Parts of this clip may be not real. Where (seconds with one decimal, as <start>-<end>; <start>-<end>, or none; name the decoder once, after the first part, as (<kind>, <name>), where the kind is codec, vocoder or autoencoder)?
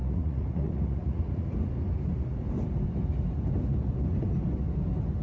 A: 0.0-1.5 (vocoder, Vocos)